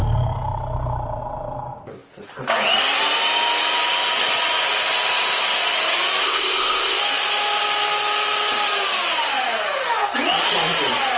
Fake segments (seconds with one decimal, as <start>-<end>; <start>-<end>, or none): 6.2-7.0